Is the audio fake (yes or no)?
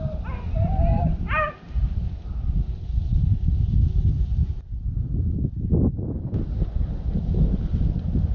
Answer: no